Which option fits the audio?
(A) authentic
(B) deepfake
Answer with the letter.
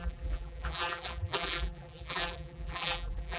B